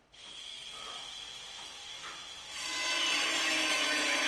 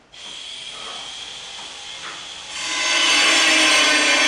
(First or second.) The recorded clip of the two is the second